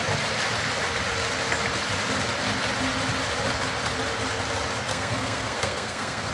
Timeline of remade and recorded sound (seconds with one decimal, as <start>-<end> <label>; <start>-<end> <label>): 0.0-4.9 recorded; 4.9-6.3 remade